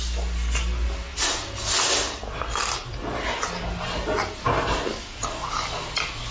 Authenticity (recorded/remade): recorded